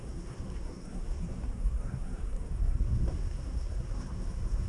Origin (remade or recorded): remade